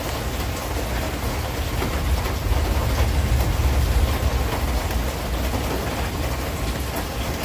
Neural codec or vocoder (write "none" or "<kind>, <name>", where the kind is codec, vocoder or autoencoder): none